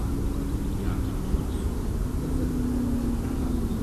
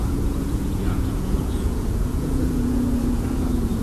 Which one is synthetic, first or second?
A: second